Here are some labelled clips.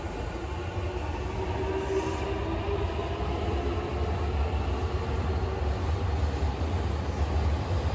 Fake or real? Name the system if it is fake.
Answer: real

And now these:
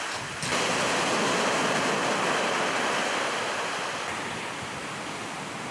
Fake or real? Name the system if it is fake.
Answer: real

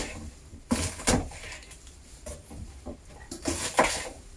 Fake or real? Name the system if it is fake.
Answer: real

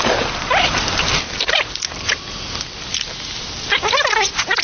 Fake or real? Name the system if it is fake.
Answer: real